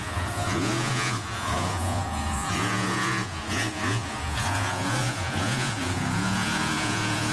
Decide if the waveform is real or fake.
fake